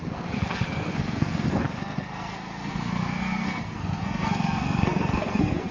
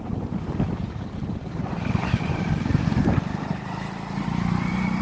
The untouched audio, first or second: second